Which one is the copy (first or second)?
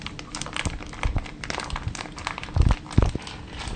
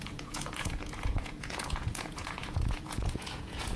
second